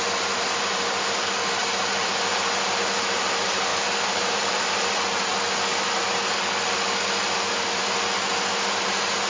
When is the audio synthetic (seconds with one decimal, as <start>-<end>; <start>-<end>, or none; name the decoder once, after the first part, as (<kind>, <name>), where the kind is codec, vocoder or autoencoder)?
1.6-2.7 (vocoder, BigVGAN v2); 3.7-4.6